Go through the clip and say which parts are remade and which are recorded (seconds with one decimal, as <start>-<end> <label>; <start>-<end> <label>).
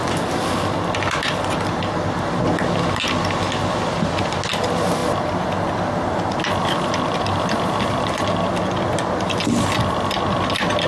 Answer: 0.0-10.9 recorded